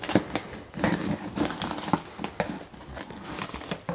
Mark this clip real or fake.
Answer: real